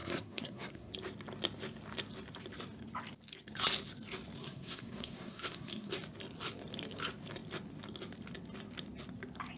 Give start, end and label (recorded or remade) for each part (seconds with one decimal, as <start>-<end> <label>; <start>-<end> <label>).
0.0-0.9 remade; 0.9-4.4 recorded; 4.4-5.9 remade; 5.9-9.6 recorded